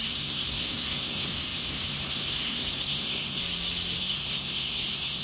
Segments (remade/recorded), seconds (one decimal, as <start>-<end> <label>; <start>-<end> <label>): 0.0-3.4 remade; 3.4-4.0 recorded; 4.0-5.2 remade